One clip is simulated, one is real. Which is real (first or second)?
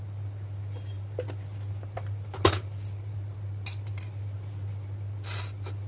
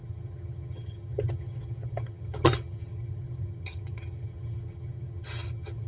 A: first